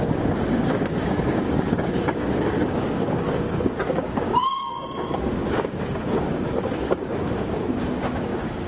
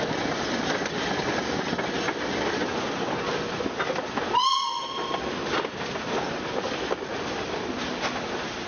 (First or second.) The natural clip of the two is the second